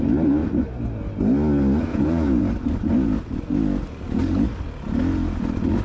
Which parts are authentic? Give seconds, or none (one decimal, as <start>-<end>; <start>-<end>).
0.0-1.9; 2.5-5.8